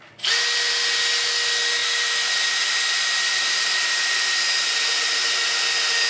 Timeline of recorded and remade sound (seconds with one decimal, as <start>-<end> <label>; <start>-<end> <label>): 0.0-6.1 recorded